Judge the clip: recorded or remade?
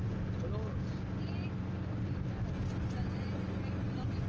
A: recorded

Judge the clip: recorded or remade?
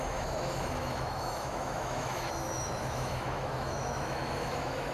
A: remade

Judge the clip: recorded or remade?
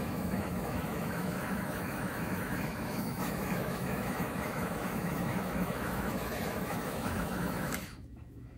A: remade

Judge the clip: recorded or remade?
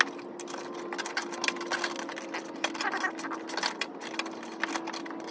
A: recorded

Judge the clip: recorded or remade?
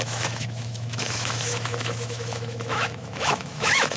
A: remade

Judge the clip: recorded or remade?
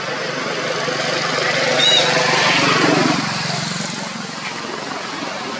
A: recorded